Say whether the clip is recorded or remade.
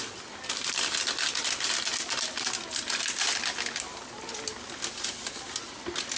recorded